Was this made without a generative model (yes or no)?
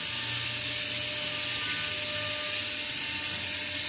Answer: yes